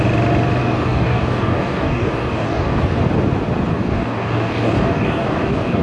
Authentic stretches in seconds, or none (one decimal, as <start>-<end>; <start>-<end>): 0.0-0.6; 2.8-3.7

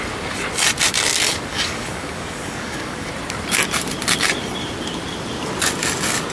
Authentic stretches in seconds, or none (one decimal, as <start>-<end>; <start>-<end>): 0.0-1.3; 3.1-6.3

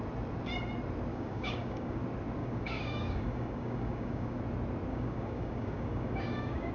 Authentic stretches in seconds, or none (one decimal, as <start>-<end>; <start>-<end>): 0.0-1.1; 2.0-2.4; 4.4-4.9

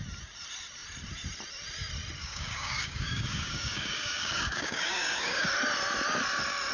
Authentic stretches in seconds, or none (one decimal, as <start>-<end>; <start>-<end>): 0.0-2.2; 5.5-6.7

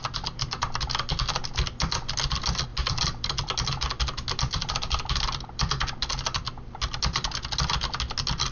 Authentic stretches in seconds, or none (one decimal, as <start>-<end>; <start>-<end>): 0.0-8.5

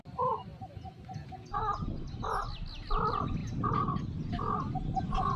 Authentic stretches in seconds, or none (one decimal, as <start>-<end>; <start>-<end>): 0.0-5.4

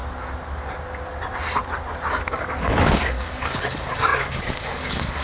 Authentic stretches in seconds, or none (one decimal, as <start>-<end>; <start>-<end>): 0.0-2.2